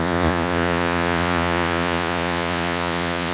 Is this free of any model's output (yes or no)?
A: no